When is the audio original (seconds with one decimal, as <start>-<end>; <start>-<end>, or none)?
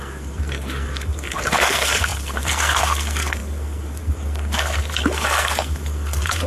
none